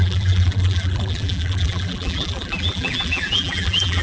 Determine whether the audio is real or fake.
fake